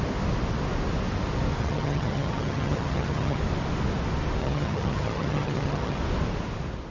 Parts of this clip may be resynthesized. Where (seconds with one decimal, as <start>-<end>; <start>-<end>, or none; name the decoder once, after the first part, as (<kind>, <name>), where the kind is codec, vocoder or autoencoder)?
1.6-3.4 (vocoder, HiFi-GAN); 4.4-6.0